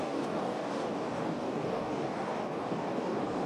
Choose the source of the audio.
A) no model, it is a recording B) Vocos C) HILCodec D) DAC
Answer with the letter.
D